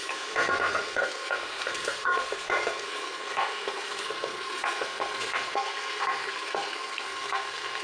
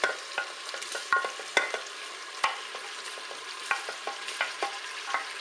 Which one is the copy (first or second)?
first